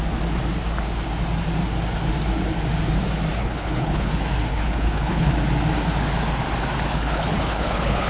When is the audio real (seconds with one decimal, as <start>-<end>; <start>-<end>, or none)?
0.0-3.4; 4.1-4.5; 5.3-6.9